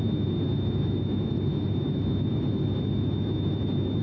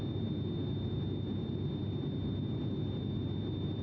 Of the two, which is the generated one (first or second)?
first